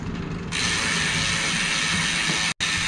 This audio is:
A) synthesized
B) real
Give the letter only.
B